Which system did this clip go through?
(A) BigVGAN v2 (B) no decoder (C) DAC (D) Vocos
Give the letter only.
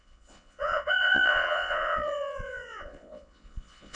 D